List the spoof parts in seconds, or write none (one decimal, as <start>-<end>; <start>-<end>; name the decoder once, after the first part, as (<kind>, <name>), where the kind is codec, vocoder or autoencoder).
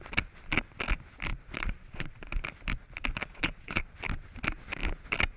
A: 1.3-2.2 (vocoder, Vocos); 3.2-3.8